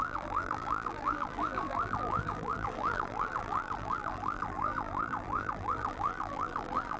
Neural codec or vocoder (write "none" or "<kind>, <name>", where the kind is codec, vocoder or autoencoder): vocoder, BigVGAN v2